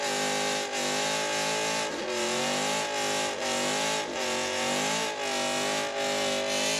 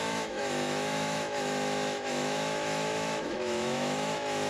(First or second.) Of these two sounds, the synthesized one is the second